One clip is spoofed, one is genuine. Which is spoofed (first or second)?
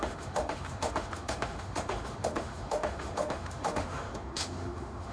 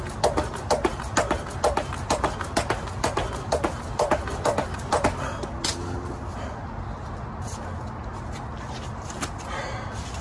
first